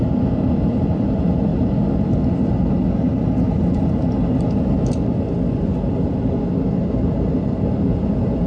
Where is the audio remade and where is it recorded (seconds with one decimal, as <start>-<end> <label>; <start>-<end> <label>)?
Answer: 0.0-8.5 recorded

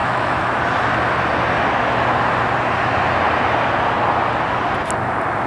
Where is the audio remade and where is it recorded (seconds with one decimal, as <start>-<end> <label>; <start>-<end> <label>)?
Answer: 0.0-0.6 remade; 0.6-5.5 recorded

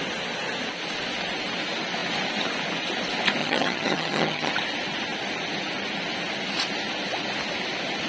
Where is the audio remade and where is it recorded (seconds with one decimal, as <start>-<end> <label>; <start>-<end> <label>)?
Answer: 0.0-3.4 recorded; 3.4-4.5 remade; 4.5-8.1 recorded

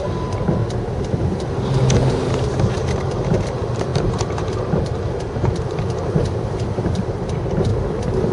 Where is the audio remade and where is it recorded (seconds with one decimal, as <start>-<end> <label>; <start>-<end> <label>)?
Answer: 0.0-0.6 remade; 0.6-2.6 recorded; 2.6-7.7 remade; 7.7-8.3 recorded